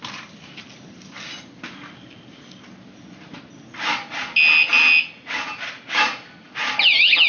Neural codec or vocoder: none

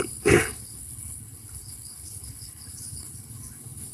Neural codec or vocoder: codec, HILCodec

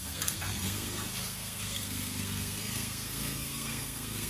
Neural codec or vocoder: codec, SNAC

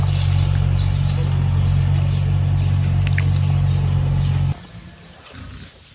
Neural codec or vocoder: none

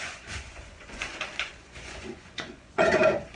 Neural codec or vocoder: vocoder, Vocos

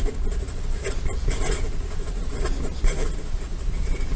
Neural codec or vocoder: none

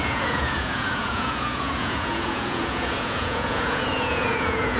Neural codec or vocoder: vocoder, Vocos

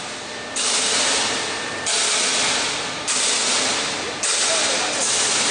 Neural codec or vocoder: none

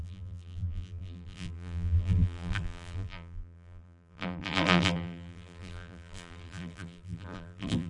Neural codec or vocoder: vocoder, BigVGAN v2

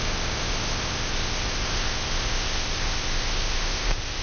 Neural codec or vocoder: codec, ZipCodec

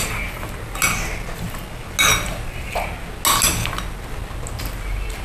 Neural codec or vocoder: none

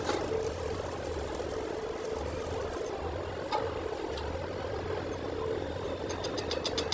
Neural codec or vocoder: none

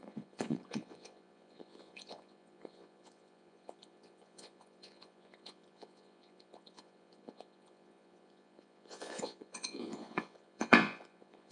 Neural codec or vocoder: vocoder, Vocos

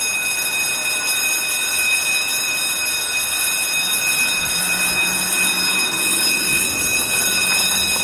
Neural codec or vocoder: none